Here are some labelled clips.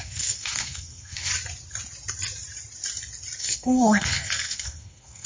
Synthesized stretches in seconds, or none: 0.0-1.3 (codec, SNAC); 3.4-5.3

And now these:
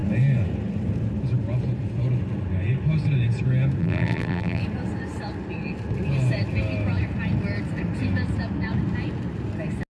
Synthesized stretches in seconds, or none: 3.8-4.6 (vocoder, BigVGAN v2)

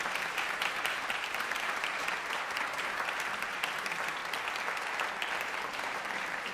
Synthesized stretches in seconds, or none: 0.0-4.2 (vocoder, BigVGAN v2); 5.4-6.5

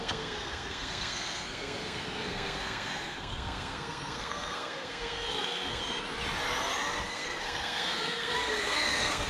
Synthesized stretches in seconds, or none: 0.0-5.8 (codec, SNAC); 7.1-9.3

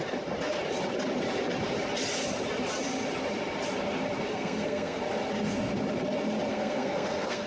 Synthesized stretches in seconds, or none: 4.3-5.0 (codec, SNAC); 6.5-7.5